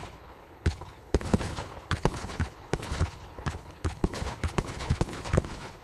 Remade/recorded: remade